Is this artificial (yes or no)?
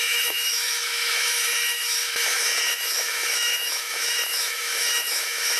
yes